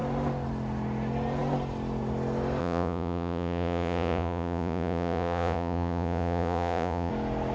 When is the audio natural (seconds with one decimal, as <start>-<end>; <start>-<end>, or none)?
0.0-2.6; 7.1-7.5